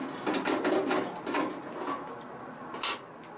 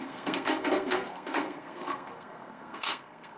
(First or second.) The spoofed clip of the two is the second